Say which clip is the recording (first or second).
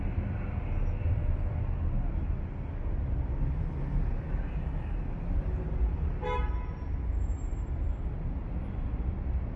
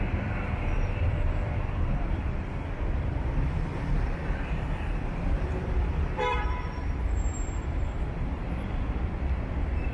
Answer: first